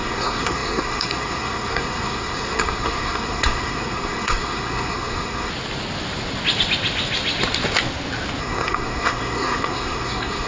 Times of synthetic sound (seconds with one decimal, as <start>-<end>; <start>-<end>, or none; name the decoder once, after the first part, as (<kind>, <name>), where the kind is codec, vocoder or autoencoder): 0.0-5.5 (codec, SNAC); 8.4-10.5